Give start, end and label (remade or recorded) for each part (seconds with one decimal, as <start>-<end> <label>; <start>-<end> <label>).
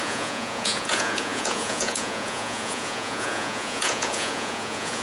0.0-5.0 remade